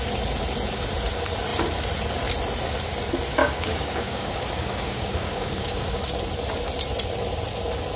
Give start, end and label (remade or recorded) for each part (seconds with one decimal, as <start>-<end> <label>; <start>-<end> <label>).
0.0-3.4 recorded; 3.4-6.0 remade; 6.0-8.0 recorded